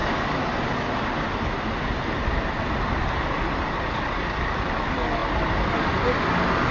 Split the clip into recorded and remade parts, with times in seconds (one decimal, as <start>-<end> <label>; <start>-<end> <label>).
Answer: 0.0-6.7 recorded